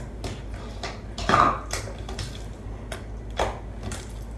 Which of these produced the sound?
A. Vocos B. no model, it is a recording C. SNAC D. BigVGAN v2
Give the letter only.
B